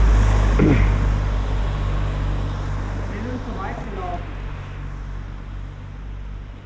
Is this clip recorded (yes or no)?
yes